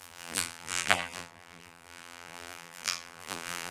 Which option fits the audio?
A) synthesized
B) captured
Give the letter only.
A